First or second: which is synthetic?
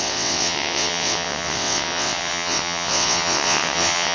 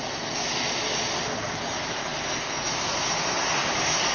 first